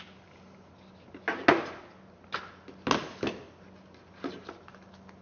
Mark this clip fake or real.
real